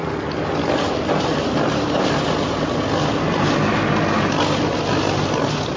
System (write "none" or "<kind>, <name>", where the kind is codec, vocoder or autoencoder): none